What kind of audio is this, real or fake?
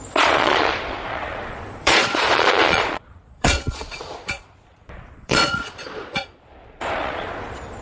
fake